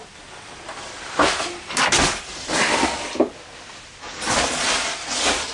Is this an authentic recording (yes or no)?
yes